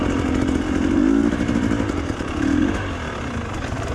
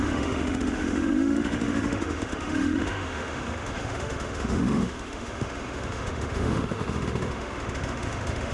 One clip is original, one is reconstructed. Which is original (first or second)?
first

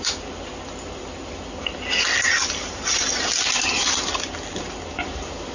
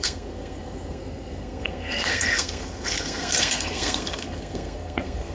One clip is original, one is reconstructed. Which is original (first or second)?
first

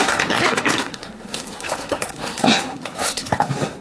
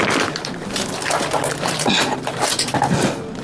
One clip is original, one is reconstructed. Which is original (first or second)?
second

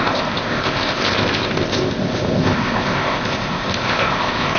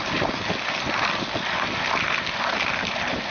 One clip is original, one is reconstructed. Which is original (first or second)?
second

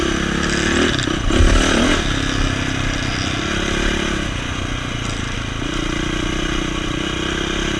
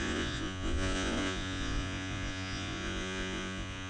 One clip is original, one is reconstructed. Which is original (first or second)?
first